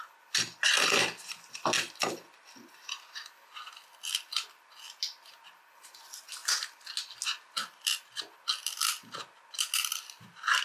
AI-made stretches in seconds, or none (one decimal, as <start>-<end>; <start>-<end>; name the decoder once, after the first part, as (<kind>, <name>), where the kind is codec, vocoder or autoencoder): none